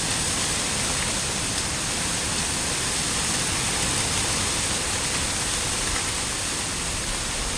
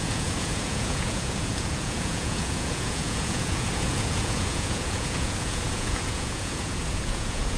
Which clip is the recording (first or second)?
first